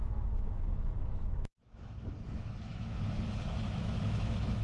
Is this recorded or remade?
remade